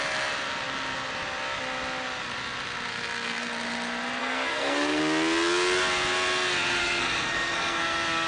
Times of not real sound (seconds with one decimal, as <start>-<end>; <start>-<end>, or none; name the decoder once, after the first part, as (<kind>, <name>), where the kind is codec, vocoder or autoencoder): 2.9-3.5 (codec, SNAC); 4.2-5.0; 6.8-8.3